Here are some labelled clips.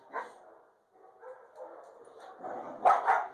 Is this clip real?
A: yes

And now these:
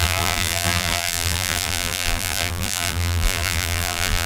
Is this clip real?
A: no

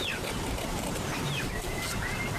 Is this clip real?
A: no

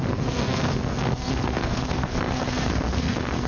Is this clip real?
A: no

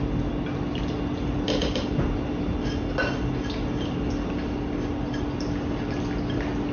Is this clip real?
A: yes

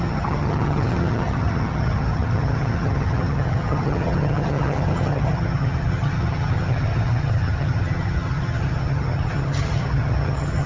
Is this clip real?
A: no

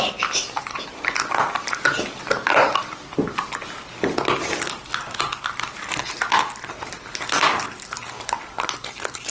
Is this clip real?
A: yes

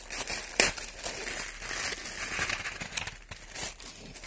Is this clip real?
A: yes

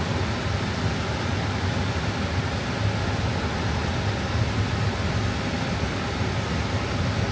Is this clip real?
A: yes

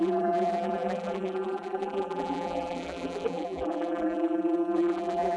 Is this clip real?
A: no